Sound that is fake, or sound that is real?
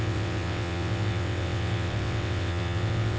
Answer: fake